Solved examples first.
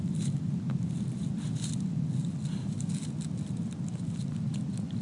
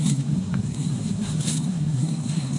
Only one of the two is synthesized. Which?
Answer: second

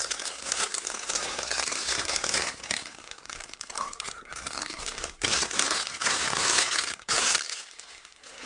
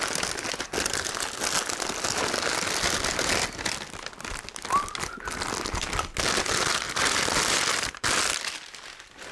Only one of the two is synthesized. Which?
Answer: first